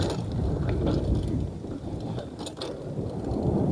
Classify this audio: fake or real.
real